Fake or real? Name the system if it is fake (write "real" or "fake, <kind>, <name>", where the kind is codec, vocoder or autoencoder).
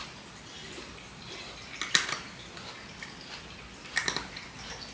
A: real